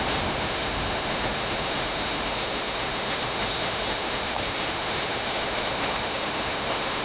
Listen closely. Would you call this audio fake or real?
fake